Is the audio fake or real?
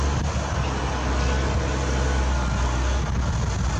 real